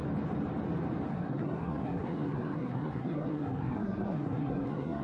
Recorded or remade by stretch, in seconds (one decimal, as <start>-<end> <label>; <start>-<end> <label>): 0.0-1.1 recorded; 1.1-5.0 remade